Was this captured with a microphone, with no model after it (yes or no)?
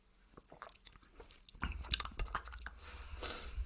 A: yes